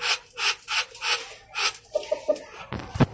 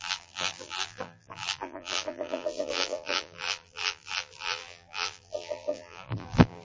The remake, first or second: second